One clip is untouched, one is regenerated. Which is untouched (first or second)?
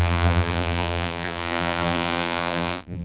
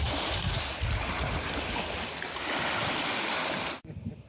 second